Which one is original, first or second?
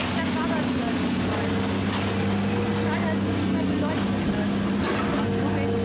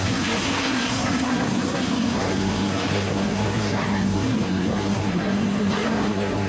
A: first